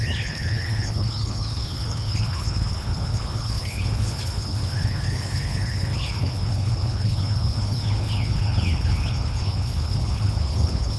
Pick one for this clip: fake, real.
fake